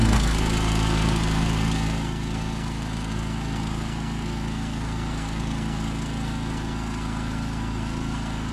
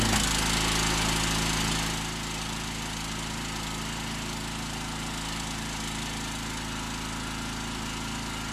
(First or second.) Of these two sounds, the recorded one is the second